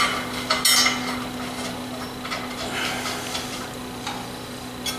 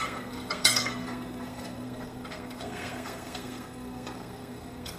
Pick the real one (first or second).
first